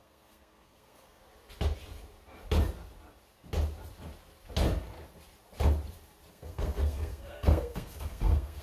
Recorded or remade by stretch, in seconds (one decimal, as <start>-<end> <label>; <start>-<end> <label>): 0.0-1.2 remade; 1.2-6.3 recorded; 6.3-8.6 remade